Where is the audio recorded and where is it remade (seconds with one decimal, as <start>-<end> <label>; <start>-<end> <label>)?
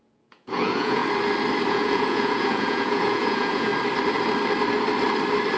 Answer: 0.0-1.0 remade; 1.0-1.7 recorded; 1.7-3.7 remade; 3.7-5.6 recorded